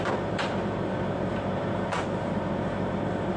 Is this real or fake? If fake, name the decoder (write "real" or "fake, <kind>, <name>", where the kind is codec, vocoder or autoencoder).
fake, vocoder, BigVGAN v2